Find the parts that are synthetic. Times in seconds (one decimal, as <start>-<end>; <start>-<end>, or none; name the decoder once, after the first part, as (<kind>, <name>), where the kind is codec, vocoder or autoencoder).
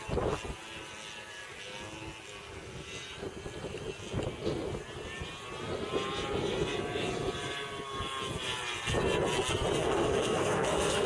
9.8-11.1 (codec, SNAC)